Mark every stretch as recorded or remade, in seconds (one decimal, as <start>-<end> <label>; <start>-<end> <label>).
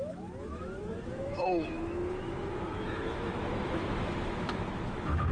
0.0-5.3 remade